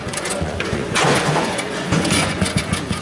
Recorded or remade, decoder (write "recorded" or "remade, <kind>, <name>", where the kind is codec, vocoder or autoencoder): remade, vocoder, Vocos